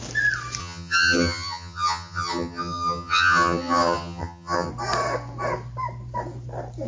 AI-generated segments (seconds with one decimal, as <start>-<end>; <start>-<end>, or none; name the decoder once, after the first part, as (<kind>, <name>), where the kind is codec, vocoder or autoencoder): 0.6-4.7 (vocoder, HiFi-GAN)